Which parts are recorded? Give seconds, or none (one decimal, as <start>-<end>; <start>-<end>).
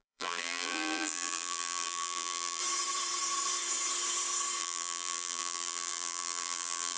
2.6-4.6